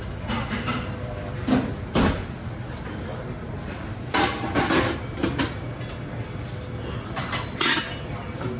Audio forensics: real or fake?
real